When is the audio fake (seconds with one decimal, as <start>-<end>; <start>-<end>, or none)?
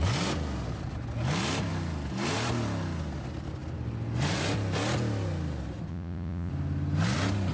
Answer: 5.9-6.5